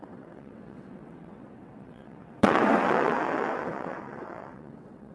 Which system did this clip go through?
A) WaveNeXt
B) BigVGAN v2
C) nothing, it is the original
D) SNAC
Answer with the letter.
A